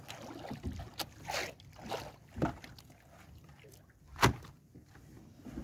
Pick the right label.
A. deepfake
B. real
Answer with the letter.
B